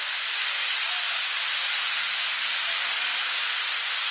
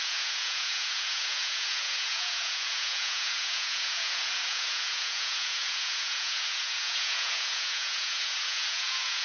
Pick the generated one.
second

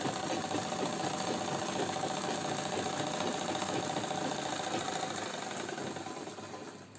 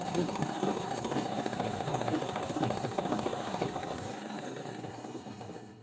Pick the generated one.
second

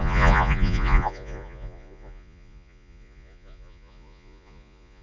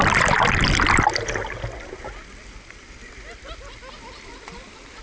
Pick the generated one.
first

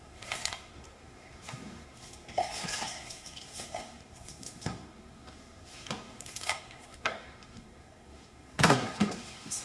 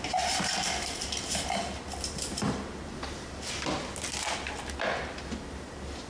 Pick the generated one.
first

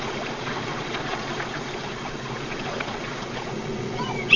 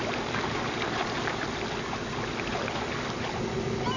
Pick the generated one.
first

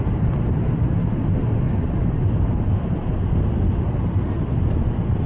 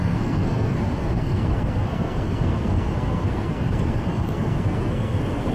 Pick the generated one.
second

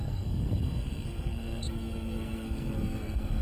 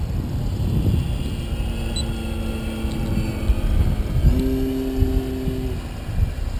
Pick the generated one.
first